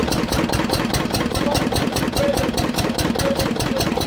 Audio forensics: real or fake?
fake